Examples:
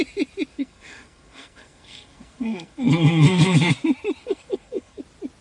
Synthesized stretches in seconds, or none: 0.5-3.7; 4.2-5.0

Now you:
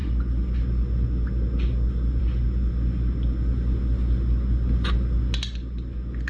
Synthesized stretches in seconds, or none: none

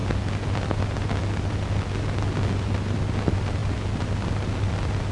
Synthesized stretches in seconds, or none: none

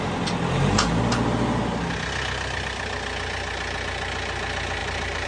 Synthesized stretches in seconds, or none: 4.8-5.3

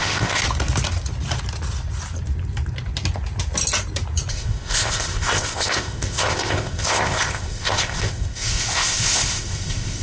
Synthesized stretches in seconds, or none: 0.0-0.4; 4.3-10.0